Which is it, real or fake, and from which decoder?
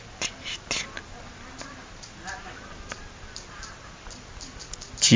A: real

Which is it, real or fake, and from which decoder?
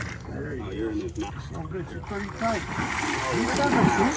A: real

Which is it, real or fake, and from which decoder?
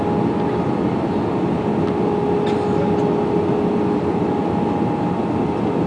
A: real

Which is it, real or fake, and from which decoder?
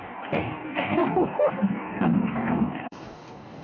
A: fake, codec, DAC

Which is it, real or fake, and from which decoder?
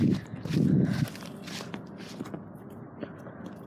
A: real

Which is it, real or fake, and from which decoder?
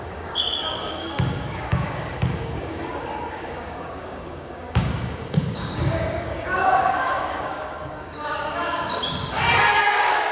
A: fake, codec, DAC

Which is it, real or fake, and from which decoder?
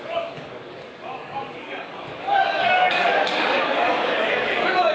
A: fake, codec, DAC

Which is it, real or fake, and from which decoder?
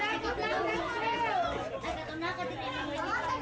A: real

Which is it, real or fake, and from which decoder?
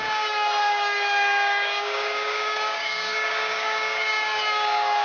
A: fake, codec, DAC